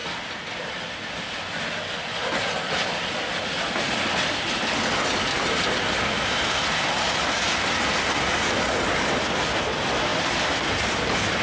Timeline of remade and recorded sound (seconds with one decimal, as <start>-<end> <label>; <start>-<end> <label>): 0.0-11.4 recorded

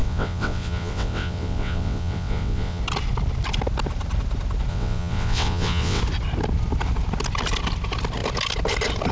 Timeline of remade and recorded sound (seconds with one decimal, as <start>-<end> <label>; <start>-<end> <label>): 0.0-2.8 remade; 2.8-4.7 recorded; 4.7-6.0 remade; 6.0-9.1 recorded

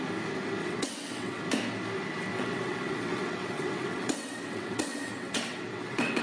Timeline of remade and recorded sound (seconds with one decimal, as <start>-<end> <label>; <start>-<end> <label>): 0.0-0.6 recorded; 0.6-1.4 remade; 1.4-2.3 recorded; 2.3-6.2 remade

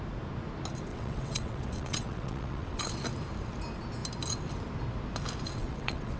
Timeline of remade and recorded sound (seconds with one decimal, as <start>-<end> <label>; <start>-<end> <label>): 0.0-0.9 recorded; 0.9-2.8 remade; 2.8-5.6 recorded; 5.6-6.2 remade

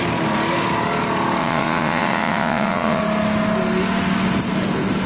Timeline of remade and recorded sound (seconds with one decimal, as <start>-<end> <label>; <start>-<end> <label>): 0.0-1.4 recorded; 1.4-3.0 remade; 3.0-5.1 recorded

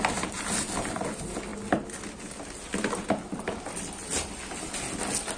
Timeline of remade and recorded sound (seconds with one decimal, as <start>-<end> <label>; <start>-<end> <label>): 0.0-5.4 recorded

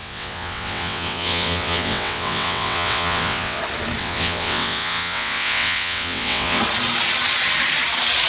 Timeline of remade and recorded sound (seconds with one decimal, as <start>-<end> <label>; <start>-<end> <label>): 0.0-3.6 remade; 3.6-4.0 recorded; 4.0-6.6 remade; 6.6-8.3 recorded

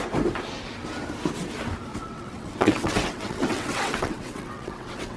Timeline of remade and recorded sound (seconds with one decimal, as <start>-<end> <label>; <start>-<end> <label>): 0.0-1.9 recorded; 1.9-5.2 remade